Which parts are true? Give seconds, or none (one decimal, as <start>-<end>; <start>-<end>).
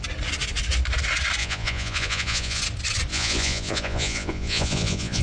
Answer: 0.0-1.4; 2.6-3.1